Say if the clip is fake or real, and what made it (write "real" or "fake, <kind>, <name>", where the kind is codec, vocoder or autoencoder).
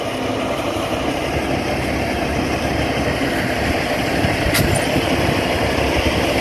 fake, vocoder, BigVGAN v2